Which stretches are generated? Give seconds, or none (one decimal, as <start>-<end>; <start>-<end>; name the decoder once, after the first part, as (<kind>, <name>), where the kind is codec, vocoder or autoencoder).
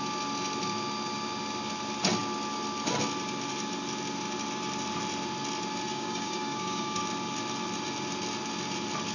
5.9-7.0 (codec, DAC)